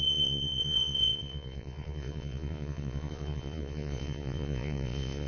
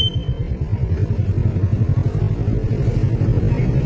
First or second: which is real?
second